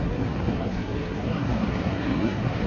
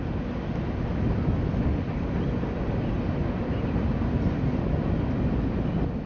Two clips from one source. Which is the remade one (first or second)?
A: first